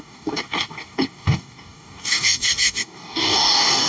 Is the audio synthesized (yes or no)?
yes